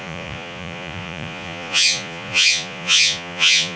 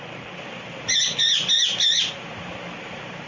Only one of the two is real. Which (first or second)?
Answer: second